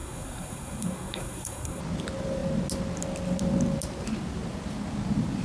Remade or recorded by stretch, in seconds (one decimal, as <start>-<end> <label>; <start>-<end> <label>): 0.0-1.8 remade; 1.8-5.4 recorded